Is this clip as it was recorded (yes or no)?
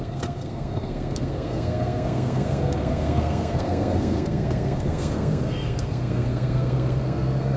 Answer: no